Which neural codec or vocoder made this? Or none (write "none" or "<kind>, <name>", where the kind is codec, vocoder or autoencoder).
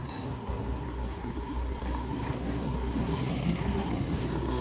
codec, SNAC